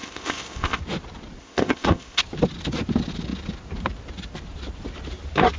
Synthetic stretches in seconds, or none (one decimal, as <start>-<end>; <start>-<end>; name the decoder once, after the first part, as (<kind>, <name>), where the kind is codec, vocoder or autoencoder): 0.0-0.8 (codec, ZipCodec); 1.4-2.2